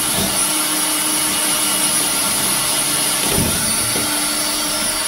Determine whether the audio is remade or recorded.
recorded